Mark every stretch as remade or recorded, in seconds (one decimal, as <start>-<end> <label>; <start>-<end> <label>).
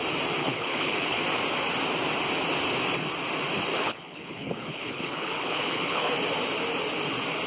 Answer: 0.0-0.4 recorded; 0.4-1.2 remade; 1.2-3.7 recorded; 3.7-6.1 remade; 6.1-7.5 recorded